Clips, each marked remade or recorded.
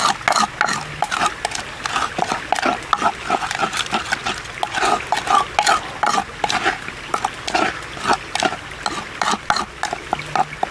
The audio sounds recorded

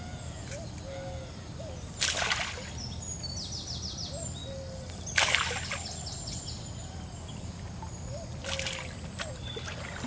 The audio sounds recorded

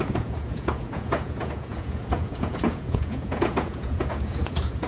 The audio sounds remade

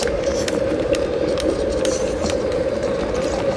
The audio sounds remade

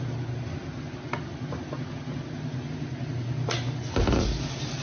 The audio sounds recorded